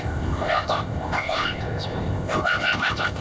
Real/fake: fake